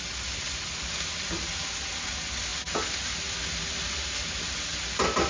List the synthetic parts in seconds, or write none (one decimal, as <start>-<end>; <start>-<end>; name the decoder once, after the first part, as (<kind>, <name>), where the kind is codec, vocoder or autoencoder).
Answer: none